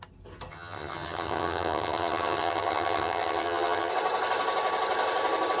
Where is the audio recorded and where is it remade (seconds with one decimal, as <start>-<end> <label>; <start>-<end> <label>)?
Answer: 0.0-0.5 recorded; 0.5-3.9 remade; 3.9-5.6 recorded